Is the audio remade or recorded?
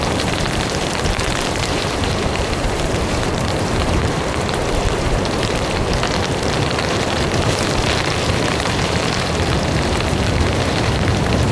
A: remade